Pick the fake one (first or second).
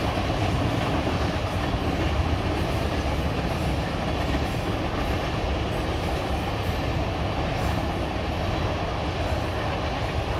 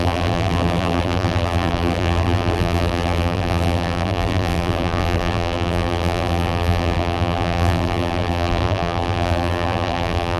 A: second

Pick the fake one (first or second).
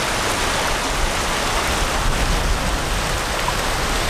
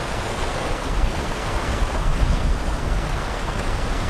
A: second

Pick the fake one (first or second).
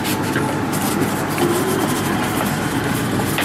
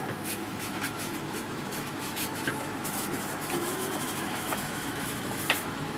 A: second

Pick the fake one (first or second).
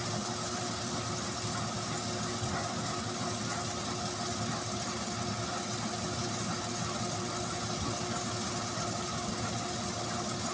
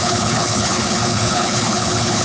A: second